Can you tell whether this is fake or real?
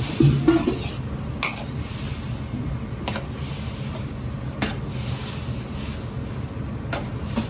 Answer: real